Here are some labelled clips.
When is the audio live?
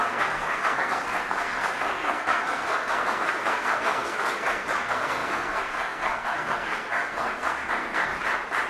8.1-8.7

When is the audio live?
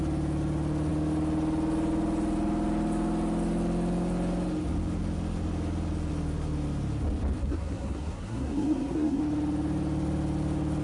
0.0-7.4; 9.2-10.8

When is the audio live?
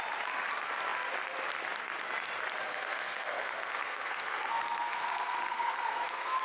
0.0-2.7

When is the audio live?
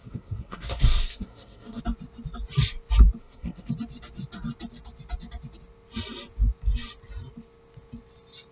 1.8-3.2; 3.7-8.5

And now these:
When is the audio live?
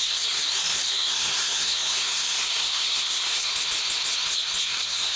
0.4-0.9; 3.5-4.6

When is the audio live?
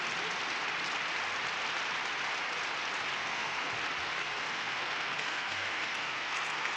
0.0-3.2; 3.7-4.2